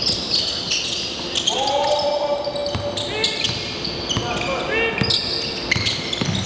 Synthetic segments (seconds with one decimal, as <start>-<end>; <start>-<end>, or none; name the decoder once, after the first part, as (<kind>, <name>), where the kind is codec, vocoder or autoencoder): none